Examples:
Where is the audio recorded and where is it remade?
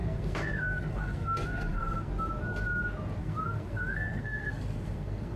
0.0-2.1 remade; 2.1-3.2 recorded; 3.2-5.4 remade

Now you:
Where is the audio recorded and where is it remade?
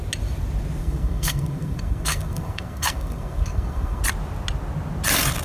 0.0-0.8 recorded; 0.8-4.0 remade; 4.0-5.4 recorded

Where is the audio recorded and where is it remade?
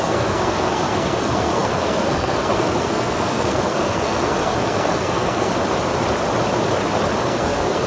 0.0-5.5 remade; 5.5-7.2 recorded; 7.2-7.9 remade